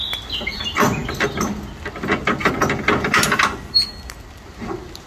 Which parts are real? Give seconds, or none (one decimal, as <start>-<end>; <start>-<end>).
0.0-5.1